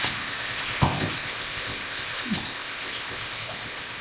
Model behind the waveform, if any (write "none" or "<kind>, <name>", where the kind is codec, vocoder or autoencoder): codec, ZipCodec